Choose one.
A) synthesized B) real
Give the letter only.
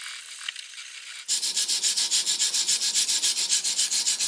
B